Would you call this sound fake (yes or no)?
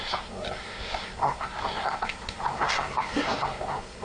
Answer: yes